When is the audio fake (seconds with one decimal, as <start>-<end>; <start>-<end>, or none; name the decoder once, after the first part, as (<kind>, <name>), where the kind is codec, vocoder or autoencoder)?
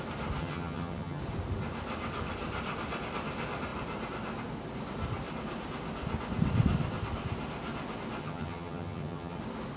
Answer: 0.4-1.2 (vocoder, HiFi-GAN); 8.2-9.4